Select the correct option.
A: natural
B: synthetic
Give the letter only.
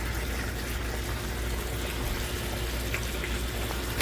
A